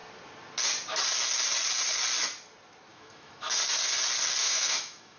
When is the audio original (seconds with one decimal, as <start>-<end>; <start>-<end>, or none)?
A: 0.0-2.9; 3.6-4.4